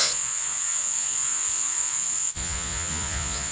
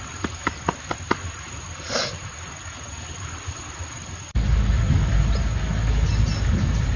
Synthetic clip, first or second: first